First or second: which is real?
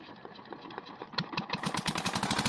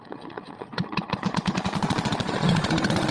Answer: first